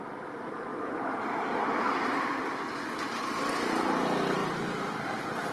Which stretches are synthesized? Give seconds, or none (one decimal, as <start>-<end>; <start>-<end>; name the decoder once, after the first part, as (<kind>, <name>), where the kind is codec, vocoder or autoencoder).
none